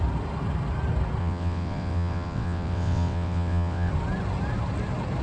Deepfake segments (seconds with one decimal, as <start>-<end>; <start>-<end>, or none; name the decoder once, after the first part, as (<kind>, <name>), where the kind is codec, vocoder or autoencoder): 1.2-3.9 (vocoder, WaveNeXt)